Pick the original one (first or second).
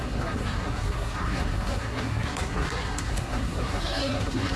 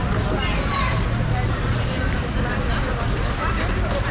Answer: second